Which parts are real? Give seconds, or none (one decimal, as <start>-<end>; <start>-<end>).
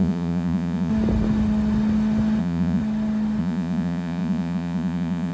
0.9-2.4; 2.8-3.4